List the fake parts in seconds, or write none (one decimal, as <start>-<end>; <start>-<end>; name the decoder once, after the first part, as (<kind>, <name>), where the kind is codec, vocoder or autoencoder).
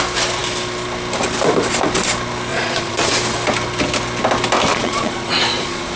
2.5-3.1 (vocoder, Vocos); 4.7-6.0